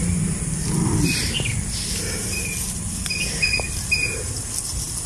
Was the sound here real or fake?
real